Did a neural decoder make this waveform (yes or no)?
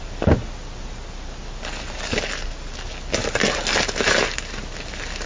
no